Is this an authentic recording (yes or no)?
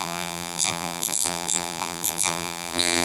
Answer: no